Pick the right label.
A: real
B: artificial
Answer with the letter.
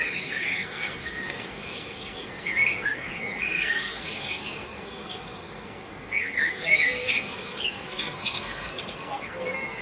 B